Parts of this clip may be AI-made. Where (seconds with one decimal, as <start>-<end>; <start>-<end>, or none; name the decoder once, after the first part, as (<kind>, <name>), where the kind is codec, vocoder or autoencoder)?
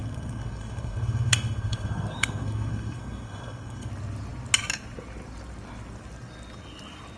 0.0-3.9 (codec, SNAC)